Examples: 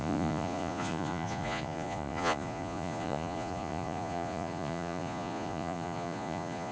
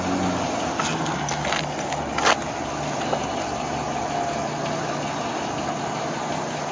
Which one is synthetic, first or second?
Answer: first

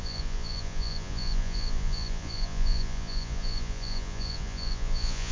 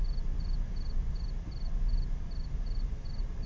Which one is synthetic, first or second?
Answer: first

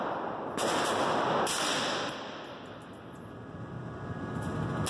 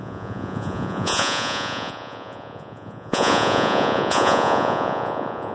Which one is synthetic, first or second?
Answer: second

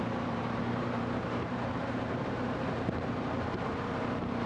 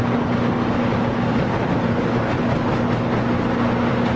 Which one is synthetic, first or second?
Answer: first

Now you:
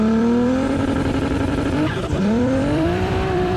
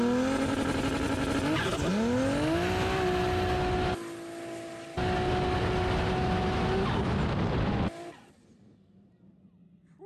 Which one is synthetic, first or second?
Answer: first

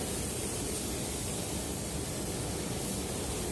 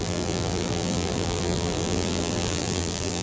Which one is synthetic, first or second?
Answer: second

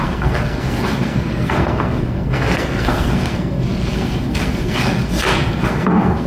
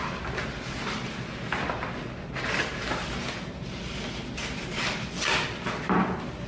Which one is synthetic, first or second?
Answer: first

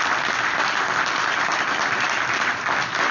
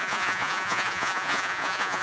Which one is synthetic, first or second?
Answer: second